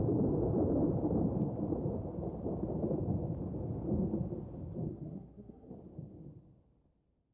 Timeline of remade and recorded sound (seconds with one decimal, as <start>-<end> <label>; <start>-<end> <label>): 0.0-4.9 recorded; 4.9-5.7 remade; 5.7-7.3 recorded